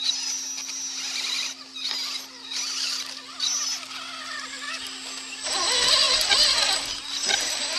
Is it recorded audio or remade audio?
recorded